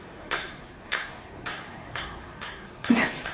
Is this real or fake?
fake